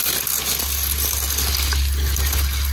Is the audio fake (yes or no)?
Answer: no